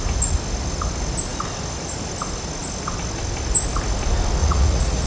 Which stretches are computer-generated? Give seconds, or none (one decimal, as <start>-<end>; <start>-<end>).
4.4-5.1